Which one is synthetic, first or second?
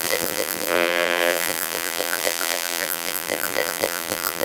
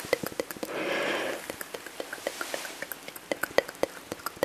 first